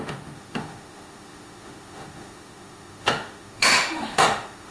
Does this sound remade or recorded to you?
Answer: remade